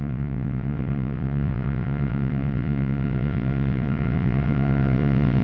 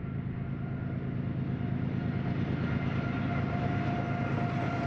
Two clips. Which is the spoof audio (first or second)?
first